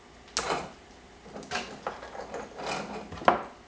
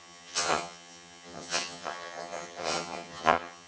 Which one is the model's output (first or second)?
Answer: second